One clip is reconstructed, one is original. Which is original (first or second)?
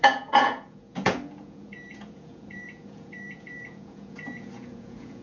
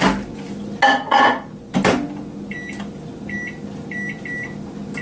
second